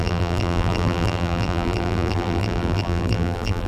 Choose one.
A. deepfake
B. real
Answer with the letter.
A